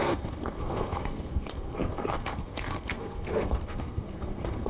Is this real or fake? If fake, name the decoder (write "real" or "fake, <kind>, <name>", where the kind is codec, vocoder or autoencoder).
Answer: fake, codec, SNAC